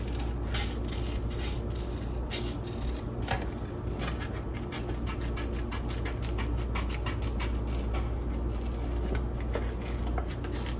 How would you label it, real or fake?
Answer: real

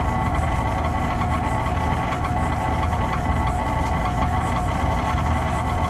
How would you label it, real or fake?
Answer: real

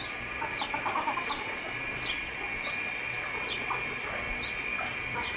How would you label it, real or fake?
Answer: real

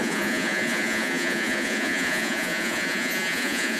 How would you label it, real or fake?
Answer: fake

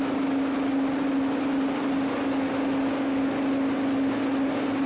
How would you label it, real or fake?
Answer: real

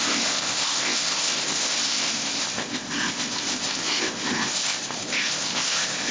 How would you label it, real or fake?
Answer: fake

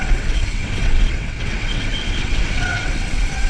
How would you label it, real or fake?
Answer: fake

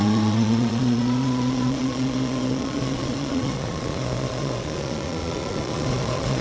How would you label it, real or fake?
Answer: fake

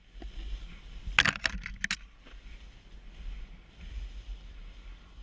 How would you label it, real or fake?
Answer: real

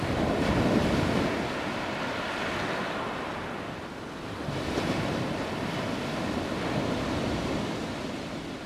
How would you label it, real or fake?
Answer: real